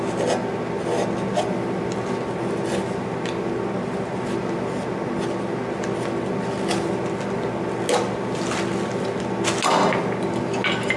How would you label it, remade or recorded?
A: recorded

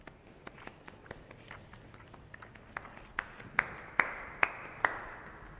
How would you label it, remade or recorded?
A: recorded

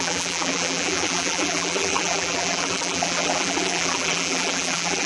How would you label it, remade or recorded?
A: remade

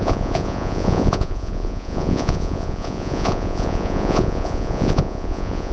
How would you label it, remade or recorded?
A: remade